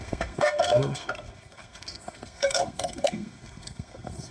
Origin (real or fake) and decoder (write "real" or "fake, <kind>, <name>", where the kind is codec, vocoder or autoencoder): fake, codec, SNAC